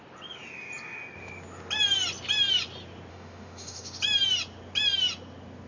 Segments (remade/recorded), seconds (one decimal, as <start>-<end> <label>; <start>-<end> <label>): 0.0-3.1 recorded; 3.1-4.0 remade; 4.0-5.7 recorded